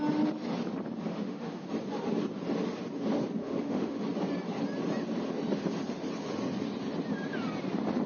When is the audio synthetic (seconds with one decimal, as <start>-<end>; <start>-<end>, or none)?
1.1-1.7; 3.4-4.0